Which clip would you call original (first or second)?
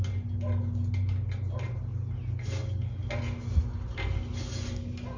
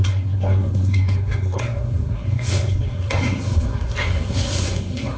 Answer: first